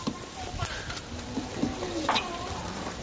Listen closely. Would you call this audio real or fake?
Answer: fake